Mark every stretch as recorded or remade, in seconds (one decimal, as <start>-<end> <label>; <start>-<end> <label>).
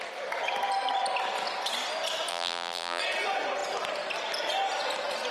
0.0-2.3 recorded; 2.3-3.0 remade; 3.0-5.3 recorded